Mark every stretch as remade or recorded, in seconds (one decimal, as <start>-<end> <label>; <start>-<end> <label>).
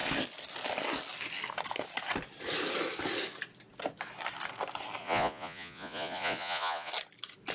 0.0-5.0 recorded; 5.0-6.9 remade; 6.9-7.5 recorded